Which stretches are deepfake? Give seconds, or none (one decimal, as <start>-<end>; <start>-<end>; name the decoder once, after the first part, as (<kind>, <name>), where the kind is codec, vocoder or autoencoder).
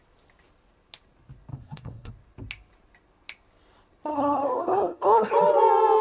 1.5-2.1 (codec, SNAC); 4.1-5.3